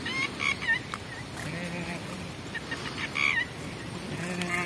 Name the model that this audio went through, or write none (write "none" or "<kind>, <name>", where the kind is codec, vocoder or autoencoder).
none